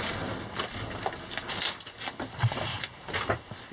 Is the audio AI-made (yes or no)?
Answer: no